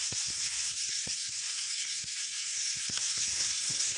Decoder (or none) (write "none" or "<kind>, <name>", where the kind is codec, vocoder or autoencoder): codec, SNAC